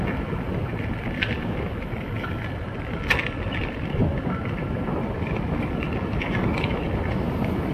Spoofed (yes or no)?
no